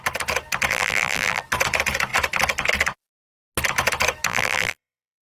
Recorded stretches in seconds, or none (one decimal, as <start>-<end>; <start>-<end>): 0.0-0.7; 1.4-4.3